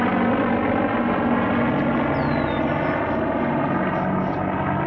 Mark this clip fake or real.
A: real